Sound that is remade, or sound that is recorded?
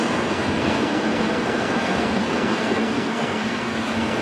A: remade